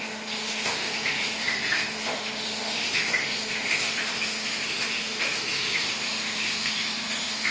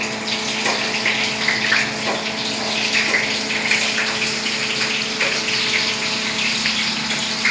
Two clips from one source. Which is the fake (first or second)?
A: first